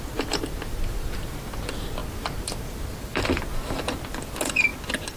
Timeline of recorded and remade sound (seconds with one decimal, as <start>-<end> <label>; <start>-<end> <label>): 0.0-5.2 recorded